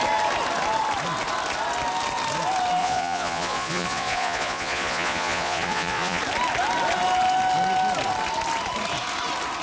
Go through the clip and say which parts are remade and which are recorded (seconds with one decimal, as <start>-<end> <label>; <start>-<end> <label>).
0.0-2.8 recorded; 2.8-6.2 remade; 6.2-9.6 recorded